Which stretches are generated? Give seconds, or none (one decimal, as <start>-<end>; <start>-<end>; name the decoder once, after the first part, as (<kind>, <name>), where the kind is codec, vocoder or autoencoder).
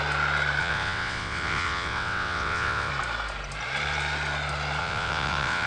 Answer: 0.6-2.9 (vocoder, WaveNeXt); 4.8-5.7